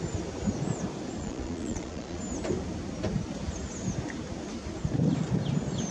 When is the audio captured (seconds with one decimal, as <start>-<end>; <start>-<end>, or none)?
0.0-1.2; 2.2-5.9